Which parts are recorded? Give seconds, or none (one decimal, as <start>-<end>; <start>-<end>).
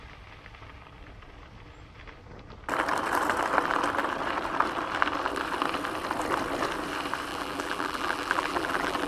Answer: 0.0-7.3